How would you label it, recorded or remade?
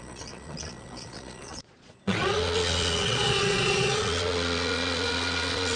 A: remade